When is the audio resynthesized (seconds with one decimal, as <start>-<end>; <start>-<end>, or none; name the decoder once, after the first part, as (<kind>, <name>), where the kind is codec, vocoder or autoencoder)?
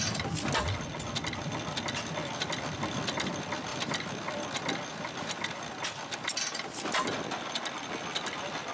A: none